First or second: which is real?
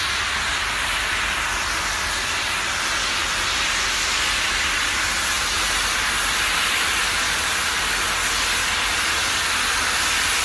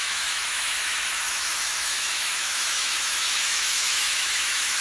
first